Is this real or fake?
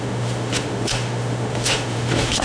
fake